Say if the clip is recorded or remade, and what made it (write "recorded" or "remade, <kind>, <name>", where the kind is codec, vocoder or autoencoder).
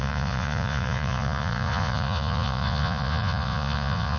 remade, vocoder, Vocos